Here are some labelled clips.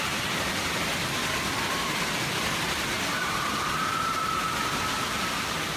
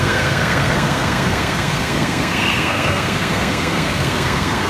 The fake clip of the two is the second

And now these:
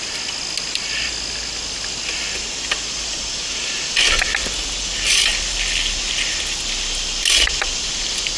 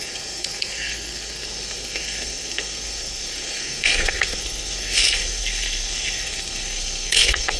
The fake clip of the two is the second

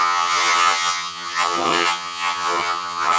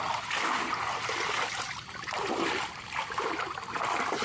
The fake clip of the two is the first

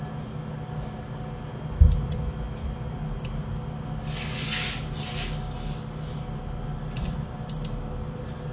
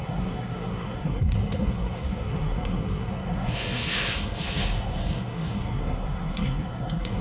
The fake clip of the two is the second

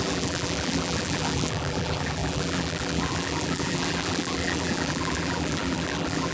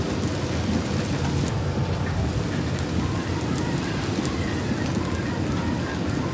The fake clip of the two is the first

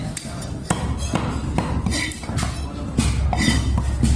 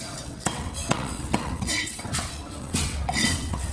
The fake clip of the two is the second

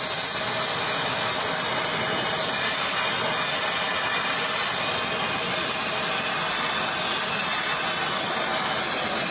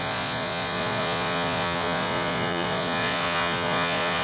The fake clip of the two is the second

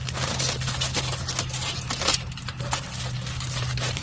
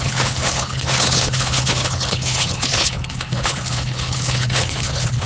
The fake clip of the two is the second